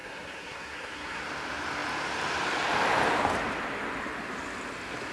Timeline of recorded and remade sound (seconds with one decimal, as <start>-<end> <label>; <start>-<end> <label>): 0.0-1.2 remade; 1.2-5.1 recorded